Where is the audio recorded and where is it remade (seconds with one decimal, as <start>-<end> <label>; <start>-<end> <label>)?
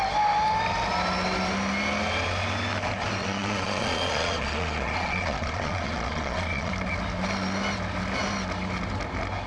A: 0.0-3.2 recorded; 3.2-6.7 remade; 6.7-9.5 recorded